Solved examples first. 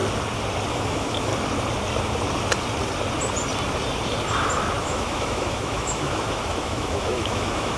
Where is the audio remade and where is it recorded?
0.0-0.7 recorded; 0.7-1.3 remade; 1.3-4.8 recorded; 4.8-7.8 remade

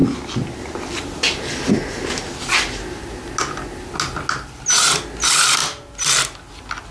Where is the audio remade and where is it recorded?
0.0-6.9 recorded

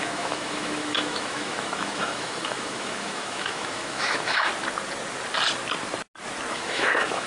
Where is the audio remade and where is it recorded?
0.0-4.5 remade; 4.5-6.5 recorded; 6.5-7.3 remade

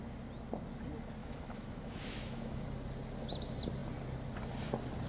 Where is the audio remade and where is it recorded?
0.0-1.2 recorded; 1.2-2.6 remade; 2.6-5.1 recorded

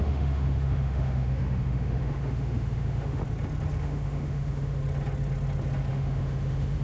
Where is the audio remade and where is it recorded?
0.0-3.2 remade; 3.2-3.8 recorded; 3.8-4.8 remade; 4.8-5.9 recorded; 5.9-6.8 remade

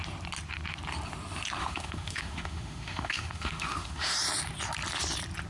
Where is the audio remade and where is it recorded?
0.0-1.6 recorded; 1.6-4.1 remade; 4.1-5.5 recorded

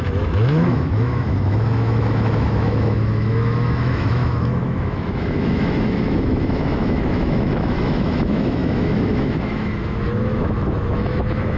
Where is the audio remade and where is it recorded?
0.0-11.6 remade